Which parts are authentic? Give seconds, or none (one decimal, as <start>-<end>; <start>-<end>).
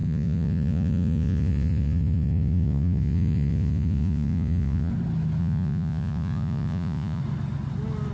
4.9-5.4; 7.2-8.1